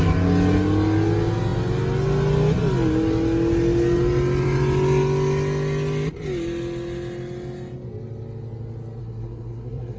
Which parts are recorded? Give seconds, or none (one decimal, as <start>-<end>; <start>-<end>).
0.0-9.0